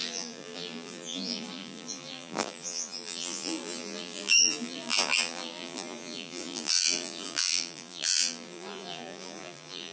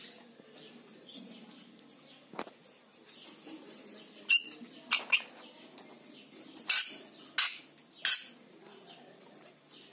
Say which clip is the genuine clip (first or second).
second